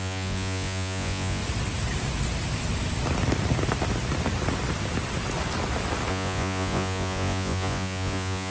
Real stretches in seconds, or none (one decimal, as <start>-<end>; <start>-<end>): 1.4-6.1